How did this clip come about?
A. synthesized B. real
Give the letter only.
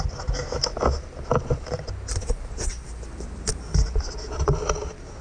B